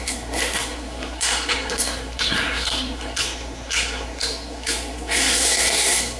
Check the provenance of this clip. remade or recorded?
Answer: remade